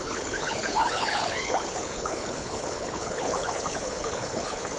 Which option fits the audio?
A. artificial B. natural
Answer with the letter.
A